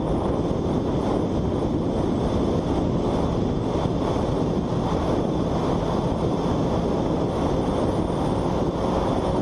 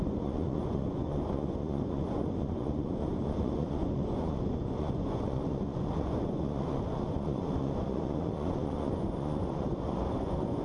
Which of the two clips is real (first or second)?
first